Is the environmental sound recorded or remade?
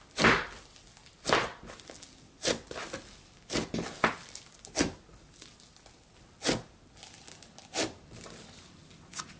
recorded